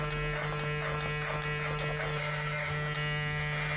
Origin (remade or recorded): recorded